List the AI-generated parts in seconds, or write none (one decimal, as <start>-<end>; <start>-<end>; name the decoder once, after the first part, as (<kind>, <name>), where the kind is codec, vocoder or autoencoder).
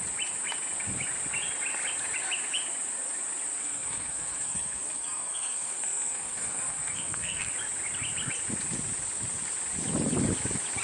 3.6-7.5 (codec, SNAC)